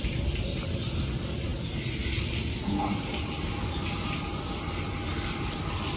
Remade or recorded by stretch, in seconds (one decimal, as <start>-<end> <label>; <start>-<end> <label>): 0.0-6.0 recorded